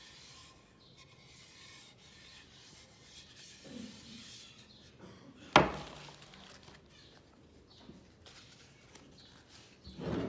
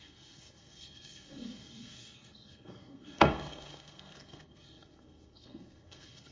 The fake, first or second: second